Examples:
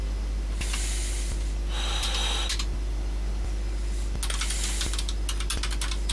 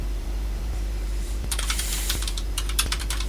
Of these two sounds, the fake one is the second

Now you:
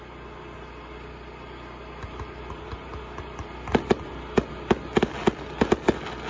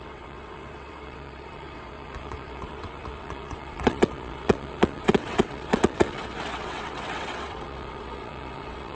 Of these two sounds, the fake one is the second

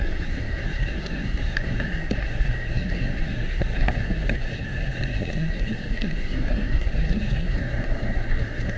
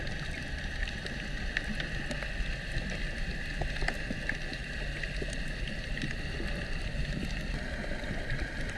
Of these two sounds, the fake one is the first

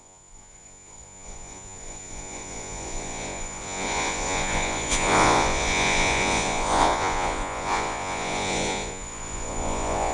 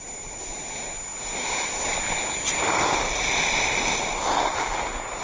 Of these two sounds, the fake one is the first